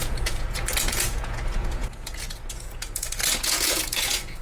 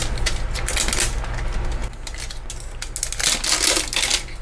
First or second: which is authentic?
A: second